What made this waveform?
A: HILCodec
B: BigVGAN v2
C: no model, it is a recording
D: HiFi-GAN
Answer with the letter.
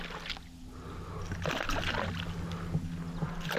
C